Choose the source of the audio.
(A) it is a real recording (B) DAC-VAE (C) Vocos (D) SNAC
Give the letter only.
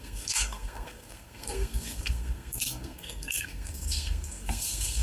D